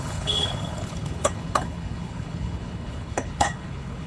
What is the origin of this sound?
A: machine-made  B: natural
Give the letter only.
A